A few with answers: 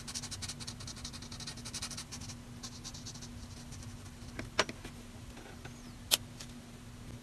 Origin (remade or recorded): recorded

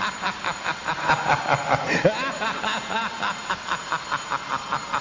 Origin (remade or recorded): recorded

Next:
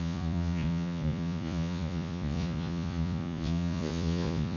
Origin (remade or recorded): remade